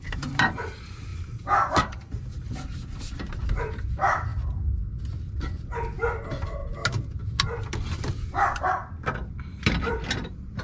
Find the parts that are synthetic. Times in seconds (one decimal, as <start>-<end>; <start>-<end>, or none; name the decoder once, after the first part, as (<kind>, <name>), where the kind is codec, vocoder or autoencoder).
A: 0.0-4.3 (vocoder, BigVGAN v2); 5.4-6.6; 9.3-10.6